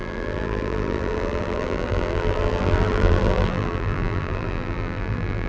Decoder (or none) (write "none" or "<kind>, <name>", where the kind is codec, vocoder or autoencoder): vocoder, BigVGAN v2